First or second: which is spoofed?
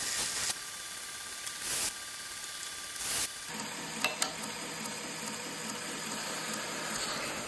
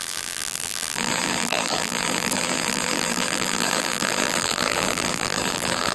second